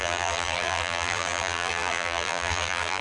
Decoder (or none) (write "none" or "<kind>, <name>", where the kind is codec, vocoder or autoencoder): vocoder, BigVGAN v2